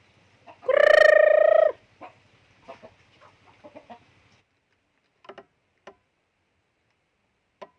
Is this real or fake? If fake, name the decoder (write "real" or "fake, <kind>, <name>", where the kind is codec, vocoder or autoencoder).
real